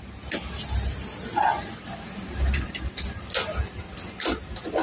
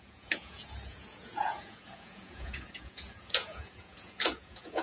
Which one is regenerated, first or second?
second